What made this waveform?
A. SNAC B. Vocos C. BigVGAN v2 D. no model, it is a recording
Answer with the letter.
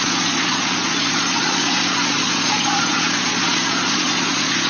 B